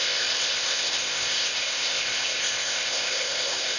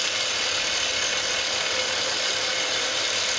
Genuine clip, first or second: second